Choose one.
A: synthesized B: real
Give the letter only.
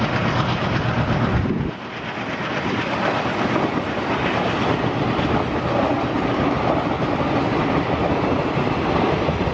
B